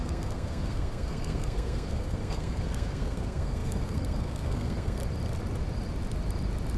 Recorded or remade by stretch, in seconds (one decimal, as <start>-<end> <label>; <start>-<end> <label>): 0.0-5.0 remade; 5.0-6.8 recorded

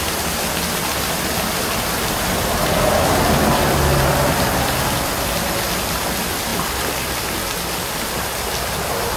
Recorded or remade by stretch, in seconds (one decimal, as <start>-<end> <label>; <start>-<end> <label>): 0.0-9.2 recorded

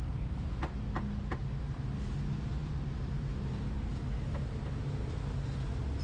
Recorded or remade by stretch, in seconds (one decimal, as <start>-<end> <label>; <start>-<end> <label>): 0.0-6.0 recorded